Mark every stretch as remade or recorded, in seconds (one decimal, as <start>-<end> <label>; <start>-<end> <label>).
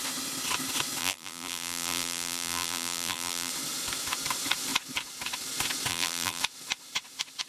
0.0-1.0 recorded; 1.0-3.5 remade; 3.5-5.9 recorded; 5.9-6.4 remade; 6.4-7.5 recorded